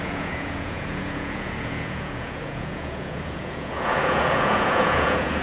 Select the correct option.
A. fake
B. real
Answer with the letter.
A